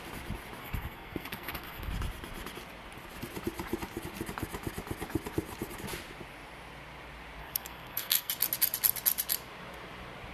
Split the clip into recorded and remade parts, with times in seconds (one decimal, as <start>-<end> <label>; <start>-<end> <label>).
0.0-0.6 recorded; 0.6-1.9 remade; 1.9-7.4 recorded; 7.4-8.3 remade; 8.3-10.3 recorded